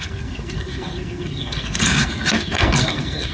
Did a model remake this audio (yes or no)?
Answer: yes